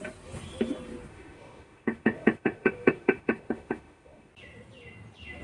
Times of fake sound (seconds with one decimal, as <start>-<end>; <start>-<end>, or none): 1.1-4.3

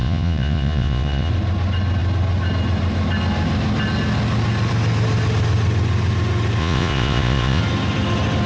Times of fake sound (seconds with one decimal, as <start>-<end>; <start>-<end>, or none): 0.0-1.3; 6.6-7.6

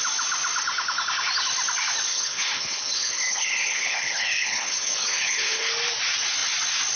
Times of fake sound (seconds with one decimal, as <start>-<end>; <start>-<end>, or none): 2.1-5.7

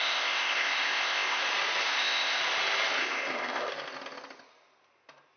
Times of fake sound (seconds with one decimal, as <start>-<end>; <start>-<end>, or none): 0.0-1.4; 1.8-2.4; 3.0-3.7

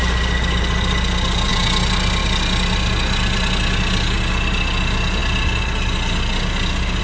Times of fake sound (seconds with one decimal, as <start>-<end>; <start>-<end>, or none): none

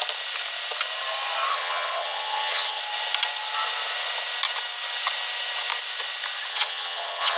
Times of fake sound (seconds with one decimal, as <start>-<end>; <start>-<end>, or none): 1.5-2.8; 6.5-7.4

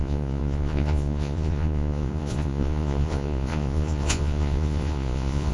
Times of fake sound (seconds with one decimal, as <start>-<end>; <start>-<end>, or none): 0.0-5.5

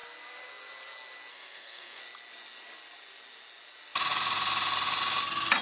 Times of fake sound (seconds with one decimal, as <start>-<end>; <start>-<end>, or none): 1.3-2.0